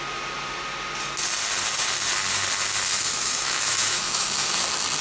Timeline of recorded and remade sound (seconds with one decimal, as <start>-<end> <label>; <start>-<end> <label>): 0.0-3.2 recorded; 3.2-4.6 remade; 4.6-5.0 recorded